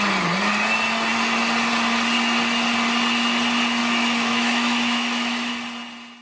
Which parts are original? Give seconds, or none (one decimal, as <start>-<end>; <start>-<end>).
0.0-3.8; 5.5-6.2